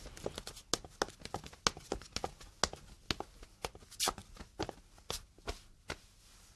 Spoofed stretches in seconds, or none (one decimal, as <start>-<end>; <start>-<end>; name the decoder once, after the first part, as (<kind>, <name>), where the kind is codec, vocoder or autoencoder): none